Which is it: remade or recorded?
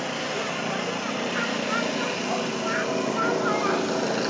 recorded